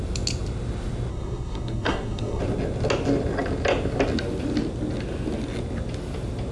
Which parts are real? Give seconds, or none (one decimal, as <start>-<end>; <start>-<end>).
0.0-1.1; 2.4-6.5